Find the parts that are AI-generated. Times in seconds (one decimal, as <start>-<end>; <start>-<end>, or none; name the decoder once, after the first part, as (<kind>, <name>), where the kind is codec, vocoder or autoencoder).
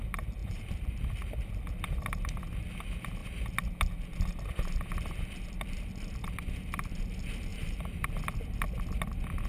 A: 0.4-1.0 (vocoder, BigVGAN v2); 7.5-8.1